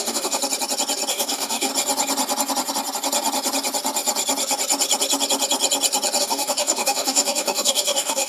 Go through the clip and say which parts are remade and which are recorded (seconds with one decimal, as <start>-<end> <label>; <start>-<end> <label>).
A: 0.0-0.4 remade; 0.4-1.1 recorded; 1.1-1.7 remade; 1.7-6.2 recorded; 6.2-8.3 remade